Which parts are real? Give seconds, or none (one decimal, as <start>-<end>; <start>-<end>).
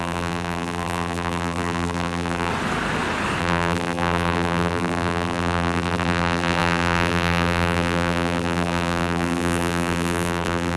2.5-3.4